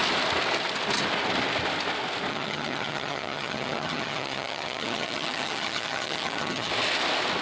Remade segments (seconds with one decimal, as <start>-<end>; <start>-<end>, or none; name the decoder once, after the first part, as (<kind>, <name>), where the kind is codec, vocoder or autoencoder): 2.3-6.7 (vocoder, HiFi-GAN)